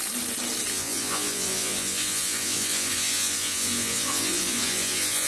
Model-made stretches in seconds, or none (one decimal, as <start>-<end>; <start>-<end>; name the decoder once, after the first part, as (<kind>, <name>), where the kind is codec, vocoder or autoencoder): 0.7-5.3 (vocoder, Vocos)